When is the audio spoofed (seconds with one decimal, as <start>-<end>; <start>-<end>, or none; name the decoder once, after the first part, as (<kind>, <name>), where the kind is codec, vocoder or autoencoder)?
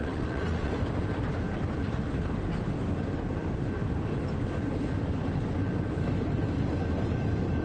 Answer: 0.0-0.7 (vocoder, WaveNeXt)